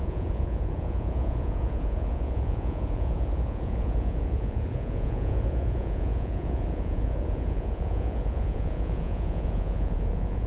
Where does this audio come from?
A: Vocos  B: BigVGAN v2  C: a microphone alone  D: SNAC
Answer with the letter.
A